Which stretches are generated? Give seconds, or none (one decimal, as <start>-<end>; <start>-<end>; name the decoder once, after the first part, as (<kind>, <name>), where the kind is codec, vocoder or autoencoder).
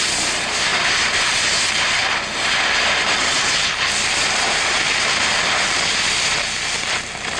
none